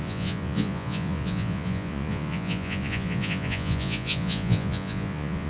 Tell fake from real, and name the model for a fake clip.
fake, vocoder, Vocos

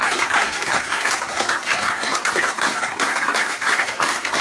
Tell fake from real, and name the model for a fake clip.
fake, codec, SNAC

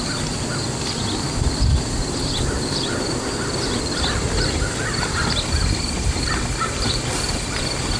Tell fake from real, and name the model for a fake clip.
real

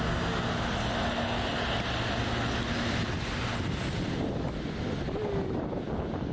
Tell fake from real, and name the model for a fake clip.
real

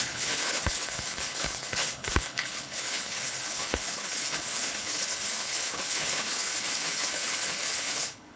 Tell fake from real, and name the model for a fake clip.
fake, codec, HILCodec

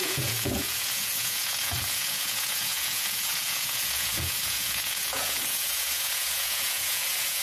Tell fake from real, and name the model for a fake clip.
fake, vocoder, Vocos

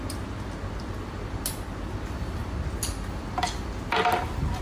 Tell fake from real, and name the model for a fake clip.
real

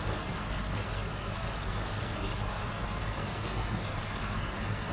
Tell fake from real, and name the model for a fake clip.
fake, codec, SNAC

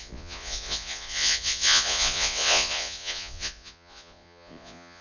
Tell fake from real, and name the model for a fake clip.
fake, vocoder, Vocos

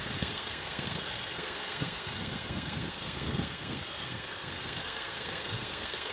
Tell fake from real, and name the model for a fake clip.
fake, codec, SNAC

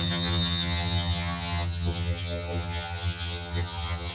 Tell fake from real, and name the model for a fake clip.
fake, vocoder, HiFi-GAN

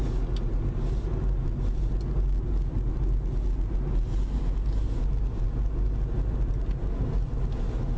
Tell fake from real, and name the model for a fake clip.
real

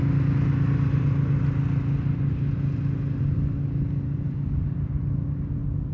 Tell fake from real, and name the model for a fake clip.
real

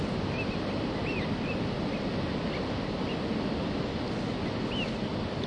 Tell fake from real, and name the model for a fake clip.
real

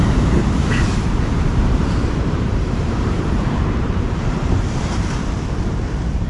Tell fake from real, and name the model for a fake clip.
fake, vocoder, BigVGAN v2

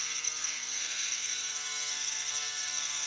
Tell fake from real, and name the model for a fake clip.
fake, codec, SNAC